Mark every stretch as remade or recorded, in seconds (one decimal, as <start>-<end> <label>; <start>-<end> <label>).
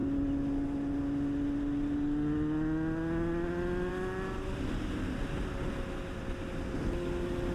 0.0-7.5 recorded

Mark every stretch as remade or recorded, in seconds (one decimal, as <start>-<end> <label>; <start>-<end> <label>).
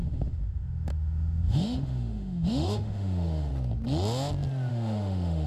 0.0-3.5 remade; 3.5-4.7 recorded; 4.7-5.5 remade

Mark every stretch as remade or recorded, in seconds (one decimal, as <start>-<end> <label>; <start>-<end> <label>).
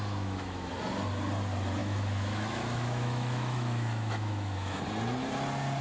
0.0-0.7 remade; 0.7-1.8 recorded; 1.8-4.8 remade; 4.8-5.8 recorded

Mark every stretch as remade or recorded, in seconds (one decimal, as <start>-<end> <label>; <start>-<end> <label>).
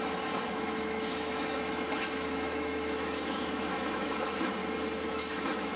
0.0-4.6 remade; 4.6-5.1 recorded; 5.1-5.8 remade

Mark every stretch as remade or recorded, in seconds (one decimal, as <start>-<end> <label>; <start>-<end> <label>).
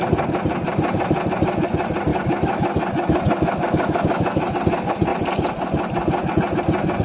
0.0-2.1 recorded; 2.1-4.5 remade; 4.5-7.0 recorded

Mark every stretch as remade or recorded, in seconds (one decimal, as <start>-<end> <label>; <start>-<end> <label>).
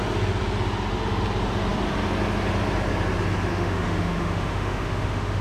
0.0-3.5 recorded; 3.5-5.4 remade